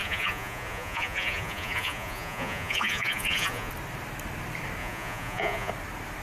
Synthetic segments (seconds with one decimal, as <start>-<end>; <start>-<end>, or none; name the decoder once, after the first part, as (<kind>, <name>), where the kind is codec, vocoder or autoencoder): 0.0-3.7 (vocoder, Vocos); 4.8-5.7